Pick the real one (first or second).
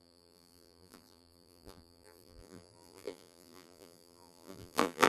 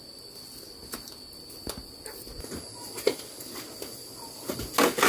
second